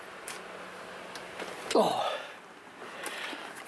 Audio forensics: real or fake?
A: real